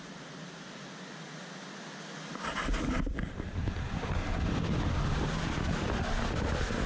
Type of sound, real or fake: real